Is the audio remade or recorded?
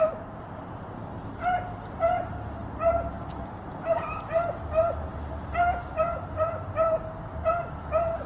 recorded